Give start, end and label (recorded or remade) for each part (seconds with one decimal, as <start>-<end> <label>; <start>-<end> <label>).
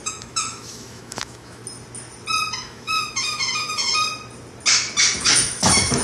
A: 0.0-1.6 remade; 1.6-2.6 recorded; 2.6-3.9 remade; 3.9-5.2 recorded; 5.2-6.0 remade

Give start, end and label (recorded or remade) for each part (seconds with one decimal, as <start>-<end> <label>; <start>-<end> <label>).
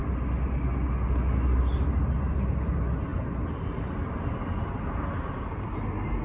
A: 0.0-6.2 recorded